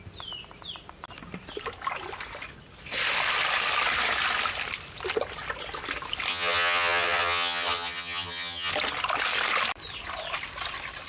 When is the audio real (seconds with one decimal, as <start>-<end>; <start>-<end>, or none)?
0.0-6.3; 8.7-11.1